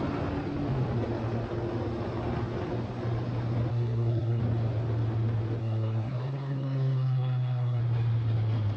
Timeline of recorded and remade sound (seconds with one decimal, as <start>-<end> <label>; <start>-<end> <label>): 0.0-3.7 recorded; 3.7-4.4 remade; 4.4-5.6 recorded; 5.6-7.8 remade; 7.8-8.8 recorded